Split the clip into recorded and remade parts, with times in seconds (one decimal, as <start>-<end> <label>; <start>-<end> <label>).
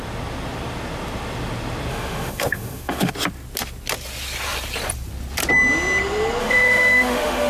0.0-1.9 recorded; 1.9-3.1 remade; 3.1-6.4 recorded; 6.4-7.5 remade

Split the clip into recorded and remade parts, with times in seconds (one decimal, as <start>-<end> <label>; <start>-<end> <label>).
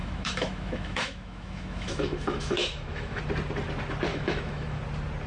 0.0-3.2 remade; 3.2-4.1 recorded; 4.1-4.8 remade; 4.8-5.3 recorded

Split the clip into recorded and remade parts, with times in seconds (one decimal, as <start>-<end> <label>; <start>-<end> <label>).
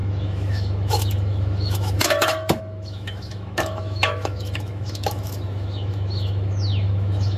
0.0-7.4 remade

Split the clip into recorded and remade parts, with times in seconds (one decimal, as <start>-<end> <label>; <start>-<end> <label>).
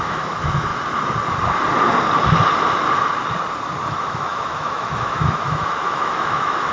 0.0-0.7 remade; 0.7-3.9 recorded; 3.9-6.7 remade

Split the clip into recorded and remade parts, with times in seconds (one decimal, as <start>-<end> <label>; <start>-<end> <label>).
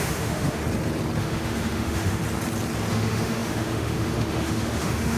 0.0-0.6 remade; 0.6-1.2 recorded; 1.2-2.2 remade; 2.2-2.9 recorded; 2.9-5.2 remade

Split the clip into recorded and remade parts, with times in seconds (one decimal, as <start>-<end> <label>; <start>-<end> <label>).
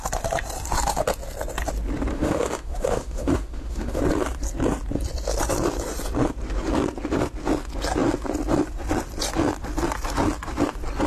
0.0-2.1 recorded; 2.1-4.0 remade; 4.0-11.1 recorded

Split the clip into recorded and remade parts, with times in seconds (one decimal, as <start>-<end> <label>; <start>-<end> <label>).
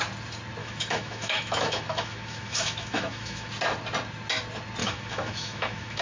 0.0-0.6 recorded; 0.6-3.5 remade; 3.5-4.8 recorded; 4.8-6.0 remade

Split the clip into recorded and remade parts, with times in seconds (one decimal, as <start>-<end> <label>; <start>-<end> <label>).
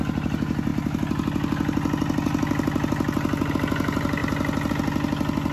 0.0-5.5 recorded